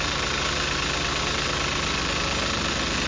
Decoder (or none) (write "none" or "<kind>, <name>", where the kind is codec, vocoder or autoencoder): none